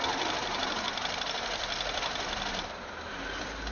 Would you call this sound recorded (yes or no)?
yes